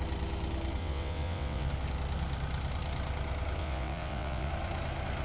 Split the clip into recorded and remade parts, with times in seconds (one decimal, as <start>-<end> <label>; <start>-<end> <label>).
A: 0.0-0.8 recorded; 0.8-1.7 remade; 1.7-3.6 recorded; 3.6-4.5 remade; 4.5-5.2 recorded